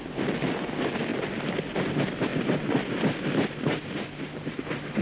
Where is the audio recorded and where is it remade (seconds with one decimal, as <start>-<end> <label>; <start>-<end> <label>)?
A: 0.0-5.0 recorded